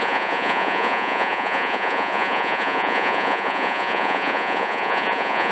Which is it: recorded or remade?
remade